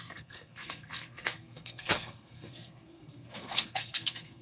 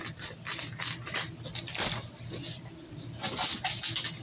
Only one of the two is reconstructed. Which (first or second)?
first